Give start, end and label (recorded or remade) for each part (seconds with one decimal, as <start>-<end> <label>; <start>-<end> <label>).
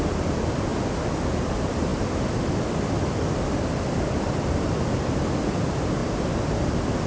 0.0-0.7 recorded; 0.7-1.2 remade; 1.2-1.9 recorded; 1.9-4.7 remade; 4.7-6.0 recorded; 6.0-6.5 remade; 6.5-7.1 recorded